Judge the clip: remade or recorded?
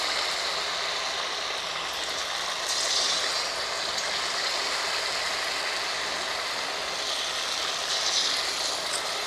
recorded